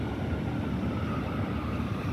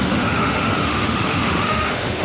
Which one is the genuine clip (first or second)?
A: first